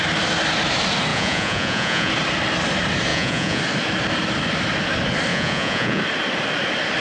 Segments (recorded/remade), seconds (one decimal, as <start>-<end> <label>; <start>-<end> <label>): 0.0-1.1 recorded; 1.1-2.1 remade; 2.1-3.1 recorded; 3.1-3.6 remade; 3.6-5.3 recorded; 5.3-6.0 remade; 6.0-7.0 recorded